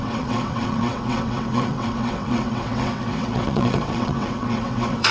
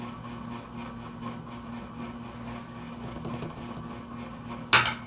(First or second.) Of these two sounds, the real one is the second